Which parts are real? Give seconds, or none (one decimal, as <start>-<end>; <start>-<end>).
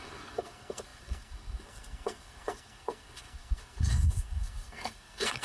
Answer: none